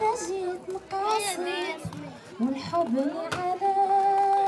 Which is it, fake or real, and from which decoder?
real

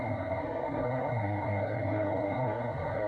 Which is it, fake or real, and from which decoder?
fake, codec, SNAC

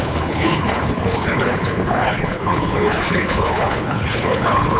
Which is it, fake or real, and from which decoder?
fake, codec, HILCodec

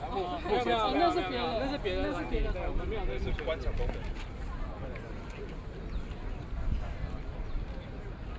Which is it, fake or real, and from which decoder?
real